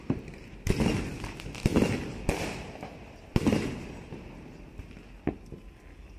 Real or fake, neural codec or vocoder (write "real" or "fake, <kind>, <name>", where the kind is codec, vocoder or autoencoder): real